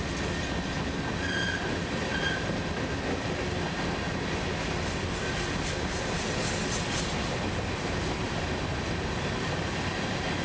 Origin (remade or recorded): recorded